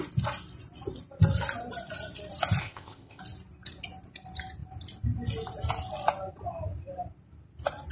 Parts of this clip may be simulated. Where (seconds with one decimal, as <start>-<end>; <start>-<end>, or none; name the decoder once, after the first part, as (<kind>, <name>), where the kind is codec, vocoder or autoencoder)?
2.6-3.2 (codec, ZipCodec)